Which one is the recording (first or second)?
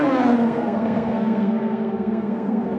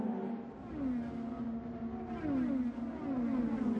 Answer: second